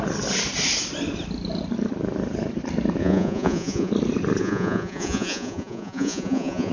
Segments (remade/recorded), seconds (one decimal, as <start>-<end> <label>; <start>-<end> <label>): 0.0-3.0 recorded; 3.0-3.9 remade; 3.9-4.4 recorded; 4.4-6.7 remade